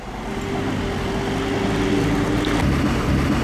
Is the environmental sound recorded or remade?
recorded